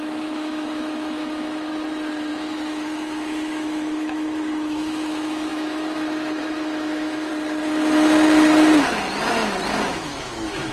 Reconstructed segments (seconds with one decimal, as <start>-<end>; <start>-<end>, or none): 0.0-1.7; 2.3-7.3; 9.9-10.7